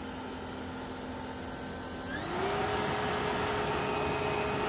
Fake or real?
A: real